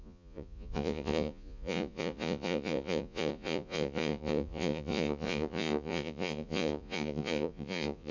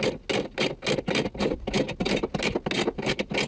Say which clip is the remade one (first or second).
first